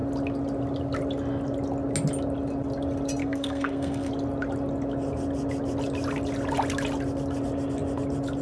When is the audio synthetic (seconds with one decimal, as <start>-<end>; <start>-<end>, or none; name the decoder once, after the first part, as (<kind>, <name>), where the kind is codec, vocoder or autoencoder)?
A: 3.2-4.1 (codec, SNAC)